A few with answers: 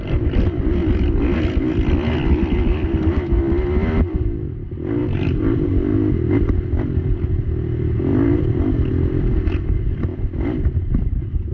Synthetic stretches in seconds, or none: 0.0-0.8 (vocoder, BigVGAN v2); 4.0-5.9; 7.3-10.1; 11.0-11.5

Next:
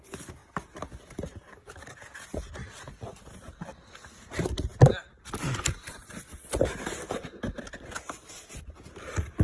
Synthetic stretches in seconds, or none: none

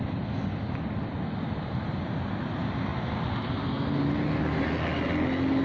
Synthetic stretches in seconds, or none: none

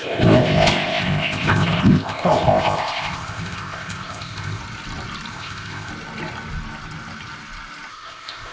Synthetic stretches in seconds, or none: 0.0-4.6 (codec, ZipCodec); 5.3-5.9; 7.9-8.5